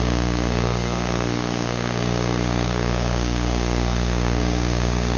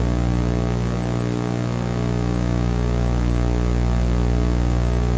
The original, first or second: second